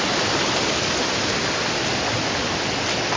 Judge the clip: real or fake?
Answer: real